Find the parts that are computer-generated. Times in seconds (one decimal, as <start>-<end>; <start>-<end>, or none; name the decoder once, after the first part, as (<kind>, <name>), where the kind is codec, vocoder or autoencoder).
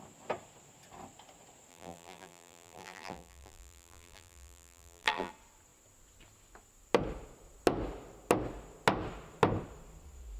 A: 1.7-5.3 (vocoder, BigVGAN v2)